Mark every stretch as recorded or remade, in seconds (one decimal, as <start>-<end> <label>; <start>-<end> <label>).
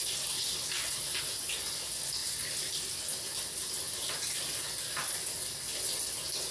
0.0-6.5 recorded